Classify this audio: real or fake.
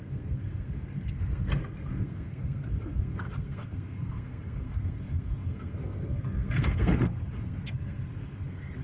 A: fake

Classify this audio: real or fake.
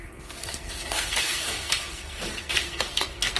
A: fake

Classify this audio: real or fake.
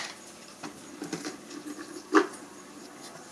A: real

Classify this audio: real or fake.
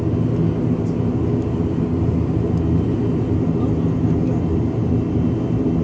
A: real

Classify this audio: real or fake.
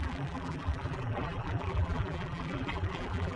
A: fake